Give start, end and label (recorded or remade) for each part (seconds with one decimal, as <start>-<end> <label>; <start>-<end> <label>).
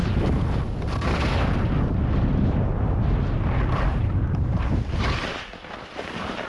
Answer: 0.0-3.9 recorded; 3.9-4.6 remade; 4.6-6.5 recorded